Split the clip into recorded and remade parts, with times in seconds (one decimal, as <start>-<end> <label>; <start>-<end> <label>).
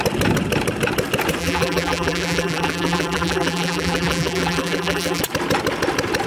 0.0-1.4 recorded; 1.4-5.2 remade; 5.2-6.3 recorded